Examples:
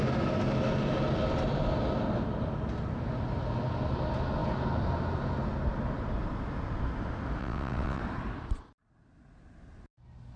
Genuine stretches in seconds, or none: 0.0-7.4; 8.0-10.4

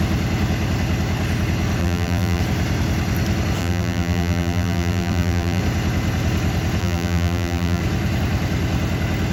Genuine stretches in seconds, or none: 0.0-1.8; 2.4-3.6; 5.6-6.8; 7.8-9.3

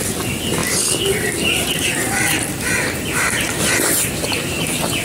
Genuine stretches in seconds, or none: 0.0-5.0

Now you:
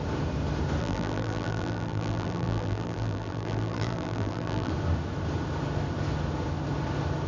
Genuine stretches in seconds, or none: 0.0-0.8; 4.7-7.3

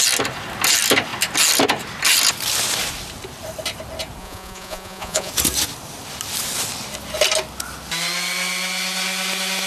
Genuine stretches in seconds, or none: 0.0-4.2; 5.3-9.7